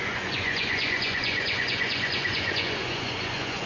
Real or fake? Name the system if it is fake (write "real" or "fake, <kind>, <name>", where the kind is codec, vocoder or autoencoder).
fake, vocoder, Vocos